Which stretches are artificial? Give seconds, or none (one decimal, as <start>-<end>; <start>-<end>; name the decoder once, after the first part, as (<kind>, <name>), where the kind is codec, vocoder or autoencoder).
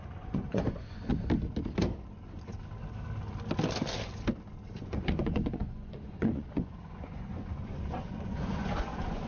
0.0-1.1 (vocoder, Vocos); 4.8-9.3